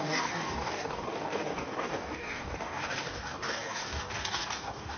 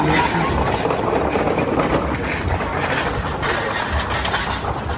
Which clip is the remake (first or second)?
first